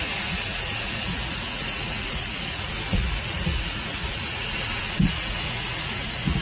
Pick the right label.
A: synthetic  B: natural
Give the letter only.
A